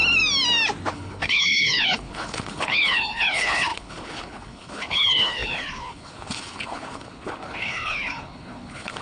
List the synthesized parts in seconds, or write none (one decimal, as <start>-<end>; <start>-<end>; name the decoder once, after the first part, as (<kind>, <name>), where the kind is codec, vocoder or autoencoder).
0.9-9.0 (codec, HILCodec)